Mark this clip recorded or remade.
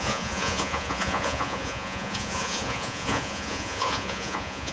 remade